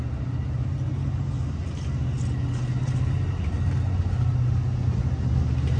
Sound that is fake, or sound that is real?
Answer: real